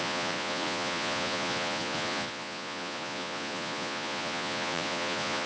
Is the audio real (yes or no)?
no